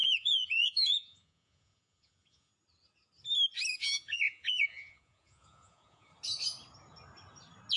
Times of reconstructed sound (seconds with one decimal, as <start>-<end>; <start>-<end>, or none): 0.0-2.5; 3.7-6.1